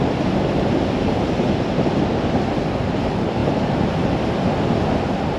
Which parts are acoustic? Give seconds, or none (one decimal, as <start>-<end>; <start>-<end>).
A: 0.0-5.4